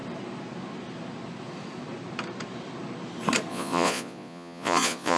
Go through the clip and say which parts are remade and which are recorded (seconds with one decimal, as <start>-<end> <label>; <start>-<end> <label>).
0.0-3.5 recorded; 3.5-5.2 remade